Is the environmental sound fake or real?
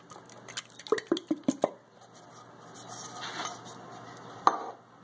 real